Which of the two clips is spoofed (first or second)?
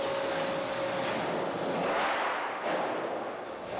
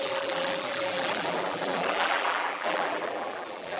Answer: second